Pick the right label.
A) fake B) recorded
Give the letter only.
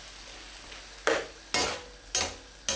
B